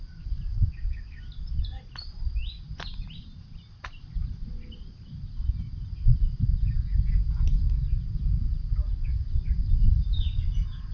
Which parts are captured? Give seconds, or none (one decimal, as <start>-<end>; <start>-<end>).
0.0-2.4; 4.0-9.1; 10.3-10.9

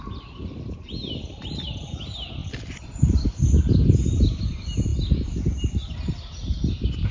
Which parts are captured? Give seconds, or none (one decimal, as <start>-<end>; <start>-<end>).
0.0-1.3; 2.0-2.4; 3.5-7.1

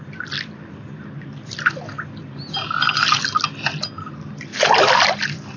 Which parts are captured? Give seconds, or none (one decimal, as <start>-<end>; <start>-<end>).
0.0-5.6

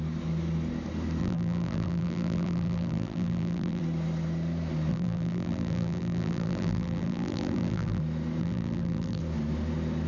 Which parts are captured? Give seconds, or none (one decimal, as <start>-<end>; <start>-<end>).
0.0-1.2; 3.8-4.9; 8.0-8.4; 9.2-10.1

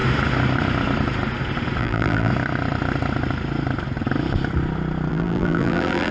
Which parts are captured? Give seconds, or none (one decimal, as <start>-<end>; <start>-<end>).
0.0-1.8; 2.3-5.1

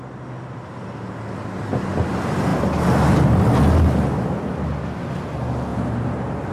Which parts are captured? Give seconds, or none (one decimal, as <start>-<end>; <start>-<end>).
0.0-5.7

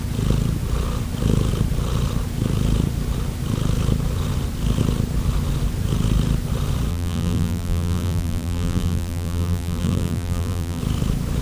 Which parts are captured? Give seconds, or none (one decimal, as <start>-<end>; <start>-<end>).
0.0-6.9; 10.8-11.4

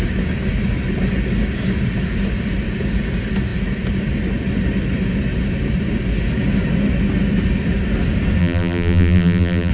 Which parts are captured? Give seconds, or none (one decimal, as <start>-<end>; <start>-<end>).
0.0-8.4